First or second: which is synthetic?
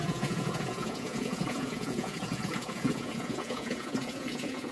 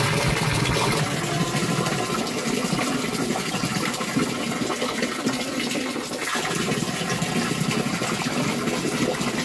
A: first